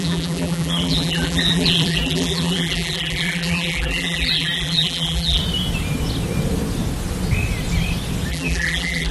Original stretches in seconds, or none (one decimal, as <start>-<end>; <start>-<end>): 5.4-8.3